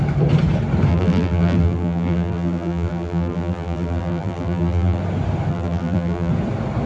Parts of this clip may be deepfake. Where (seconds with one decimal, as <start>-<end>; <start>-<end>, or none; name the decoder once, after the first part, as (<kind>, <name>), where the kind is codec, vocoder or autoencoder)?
0.9-5.0 (vocoder, BigVGAN v2); 5.5-6.3